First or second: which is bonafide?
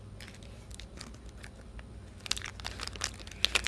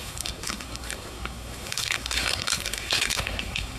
first